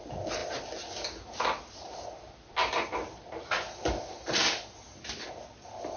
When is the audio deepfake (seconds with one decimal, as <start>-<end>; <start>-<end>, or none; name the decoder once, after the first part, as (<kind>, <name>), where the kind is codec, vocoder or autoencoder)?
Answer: none